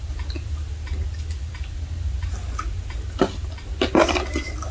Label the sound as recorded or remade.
recorded